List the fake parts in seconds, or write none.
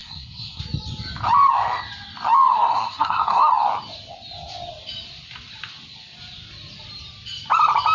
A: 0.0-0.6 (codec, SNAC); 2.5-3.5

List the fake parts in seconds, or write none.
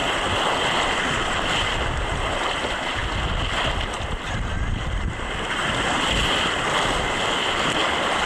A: none